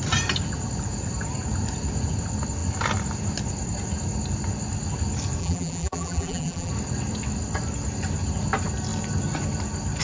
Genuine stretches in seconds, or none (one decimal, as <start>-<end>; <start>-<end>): 0.0-5.4; 6.7-10.0